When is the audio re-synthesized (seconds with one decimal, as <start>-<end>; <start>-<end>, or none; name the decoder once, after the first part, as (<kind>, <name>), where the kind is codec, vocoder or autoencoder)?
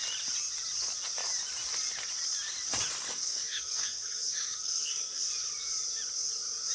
3.1-5.3 (codec, SNAC)